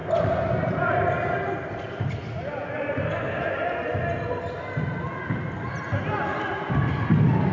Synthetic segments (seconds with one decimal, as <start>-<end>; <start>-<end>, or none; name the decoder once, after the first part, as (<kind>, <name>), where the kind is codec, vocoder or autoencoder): none